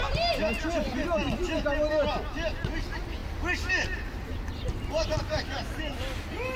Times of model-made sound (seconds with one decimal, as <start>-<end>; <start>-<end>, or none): none